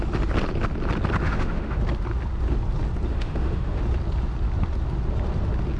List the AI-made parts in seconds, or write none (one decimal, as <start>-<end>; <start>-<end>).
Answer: 1.2-1.8; 3.1-3.8